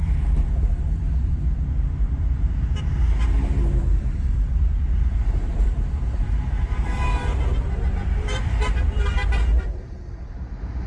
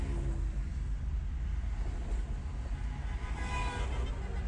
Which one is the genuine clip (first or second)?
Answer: second